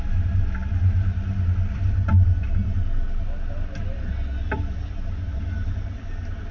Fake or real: real